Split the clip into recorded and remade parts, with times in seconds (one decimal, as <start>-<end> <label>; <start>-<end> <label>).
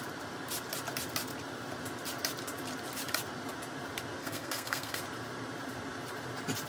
0.0-4.2 recorded; 4.2-5.0 remade; 5.0-6.7 recorded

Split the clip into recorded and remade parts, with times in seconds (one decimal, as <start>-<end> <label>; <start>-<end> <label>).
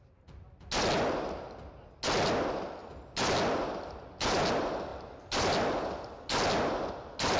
0.0-7.4 recorded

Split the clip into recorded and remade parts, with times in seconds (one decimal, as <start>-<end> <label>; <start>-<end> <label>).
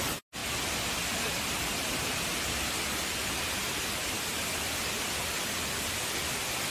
0.0-6.7 recorded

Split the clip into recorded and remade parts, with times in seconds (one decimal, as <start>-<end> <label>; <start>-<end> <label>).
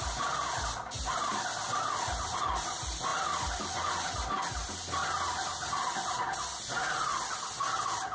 0.0-8.1 recorded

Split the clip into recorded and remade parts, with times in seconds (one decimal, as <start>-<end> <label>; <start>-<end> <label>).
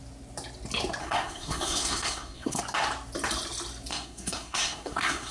0.0-1.0 recorded; 1.0-2.6 remade; 2.6-3.9 recorded; 3.9-5.3 remade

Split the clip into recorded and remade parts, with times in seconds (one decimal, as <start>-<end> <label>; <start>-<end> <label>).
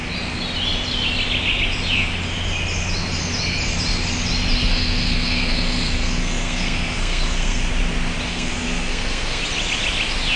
0.0-4.6 recorded; 4.6-7.7 remade; 7.7-8.3 recorded; 8.3-9.4 remade; 9.4-10.4 recorded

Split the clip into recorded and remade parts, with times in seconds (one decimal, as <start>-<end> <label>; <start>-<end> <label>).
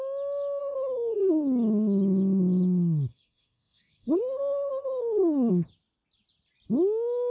0.0-0.6 recorded; 0.6-1.3 remade; 1.3-3.1 recorded; 3.1-5.5 remade; 5.5-7.3 recorded